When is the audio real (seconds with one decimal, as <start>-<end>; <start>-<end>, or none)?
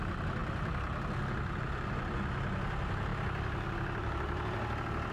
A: 0.4-1.6; 3.1-5.1